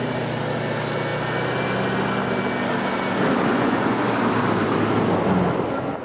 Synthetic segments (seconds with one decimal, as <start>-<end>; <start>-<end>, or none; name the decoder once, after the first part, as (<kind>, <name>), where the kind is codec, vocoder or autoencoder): 3.5-4.1 (vocoder, Vocos)